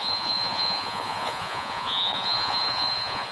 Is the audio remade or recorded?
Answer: remade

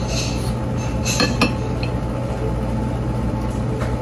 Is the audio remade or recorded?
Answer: recorded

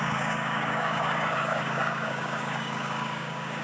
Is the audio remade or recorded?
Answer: remade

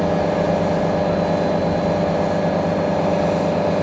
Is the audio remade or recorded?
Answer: recorded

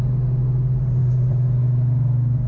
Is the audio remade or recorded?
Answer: recorded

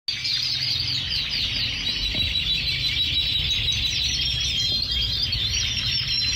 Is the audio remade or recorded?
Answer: recorded